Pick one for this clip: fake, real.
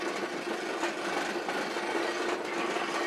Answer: real